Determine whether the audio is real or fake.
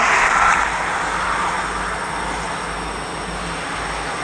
real